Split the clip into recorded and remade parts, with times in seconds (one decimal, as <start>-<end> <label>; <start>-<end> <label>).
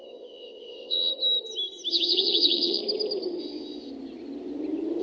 0.0-1.1 remade; 1.1-1.9 recorded; 1.9-2.8 remade; 2.8-3.4 recorded; 3.4-3.9 remade; 3.9-5.0 recorded